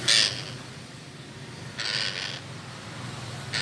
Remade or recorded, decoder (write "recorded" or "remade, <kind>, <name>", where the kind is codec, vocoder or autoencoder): recorded